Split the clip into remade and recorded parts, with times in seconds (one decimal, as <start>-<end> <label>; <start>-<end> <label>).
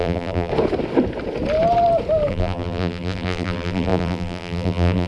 0.0-0.5 remade; 0.5-2.3 recorded; 2.3-5.1 remade